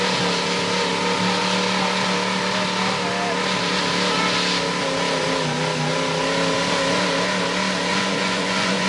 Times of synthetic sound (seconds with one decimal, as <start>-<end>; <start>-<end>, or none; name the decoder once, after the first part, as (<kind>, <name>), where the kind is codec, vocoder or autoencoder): 7.9-8.9 (vocoder, Vocos)